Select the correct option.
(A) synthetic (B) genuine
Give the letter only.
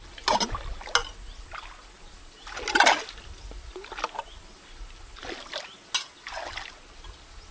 B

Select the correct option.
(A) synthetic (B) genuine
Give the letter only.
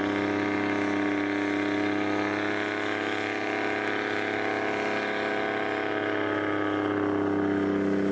B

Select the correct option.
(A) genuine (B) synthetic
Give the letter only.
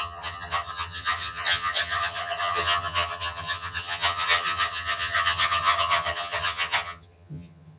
B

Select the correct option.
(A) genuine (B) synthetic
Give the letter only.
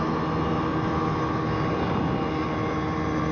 A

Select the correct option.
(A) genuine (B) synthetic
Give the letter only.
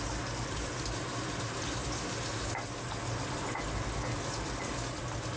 A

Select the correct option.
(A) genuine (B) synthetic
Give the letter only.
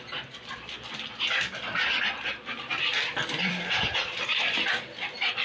A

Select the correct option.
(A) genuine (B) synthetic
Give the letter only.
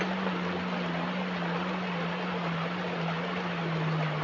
A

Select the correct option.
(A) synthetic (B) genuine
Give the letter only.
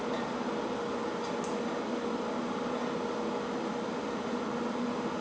B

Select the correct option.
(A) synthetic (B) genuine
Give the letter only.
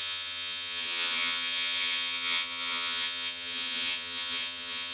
A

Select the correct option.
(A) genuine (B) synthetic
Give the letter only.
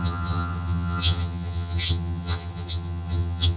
B